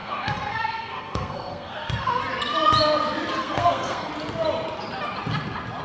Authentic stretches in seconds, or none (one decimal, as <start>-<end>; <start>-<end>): 2.2-3.4; 4.1-5.8